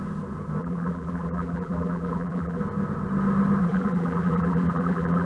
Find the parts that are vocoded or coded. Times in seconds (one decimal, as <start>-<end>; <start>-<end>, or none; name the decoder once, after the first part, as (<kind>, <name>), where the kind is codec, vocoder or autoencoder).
0.6-2.6 (vocoder, BigVGAN v2); 3.6-5.3